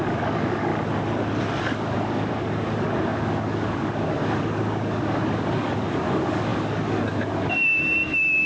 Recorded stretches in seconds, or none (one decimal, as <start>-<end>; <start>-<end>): 0.7-1.6